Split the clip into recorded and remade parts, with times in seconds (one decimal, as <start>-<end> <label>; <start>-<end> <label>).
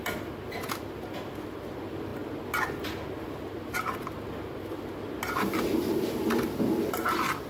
0.0-7.5 recorded